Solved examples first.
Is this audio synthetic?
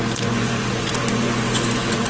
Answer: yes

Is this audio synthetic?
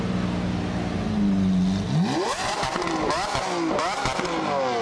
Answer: no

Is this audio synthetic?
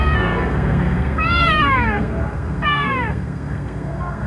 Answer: yes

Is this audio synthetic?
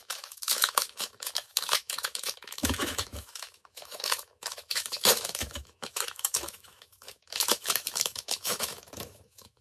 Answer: yes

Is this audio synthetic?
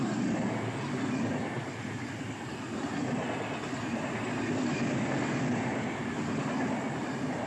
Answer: no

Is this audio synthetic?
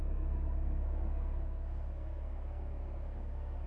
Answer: yes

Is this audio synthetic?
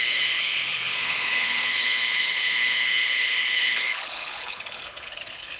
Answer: yes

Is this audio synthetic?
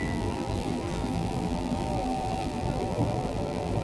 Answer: yes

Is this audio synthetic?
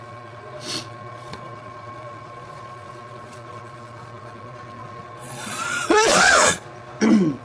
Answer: yes